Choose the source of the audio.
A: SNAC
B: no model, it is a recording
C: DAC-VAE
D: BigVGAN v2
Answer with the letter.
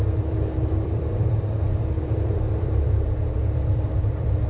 D